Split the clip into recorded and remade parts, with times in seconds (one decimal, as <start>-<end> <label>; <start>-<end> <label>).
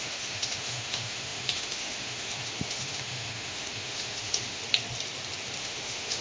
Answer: 0.0-4.6 remade; 4.6-5.6 recorded; 5.6-6.2 remade